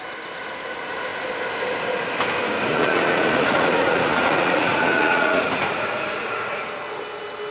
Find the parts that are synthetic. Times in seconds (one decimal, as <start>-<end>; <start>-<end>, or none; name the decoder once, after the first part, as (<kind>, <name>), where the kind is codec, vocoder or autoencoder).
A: 2.7-6.7 (vocoder, Vocos)